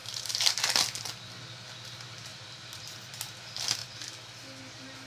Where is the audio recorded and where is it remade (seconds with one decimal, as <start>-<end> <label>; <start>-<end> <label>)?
0.0-0.5 remade; 0.5-2.3 recorded; 2.3-2.9 remade; 2.9-5.1 recorded